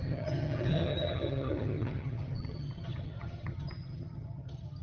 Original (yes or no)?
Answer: no